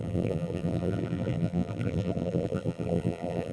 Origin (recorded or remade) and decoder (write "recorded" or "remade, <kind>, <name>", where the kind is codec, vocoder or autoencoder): remade, vocoder, BigVGAN v2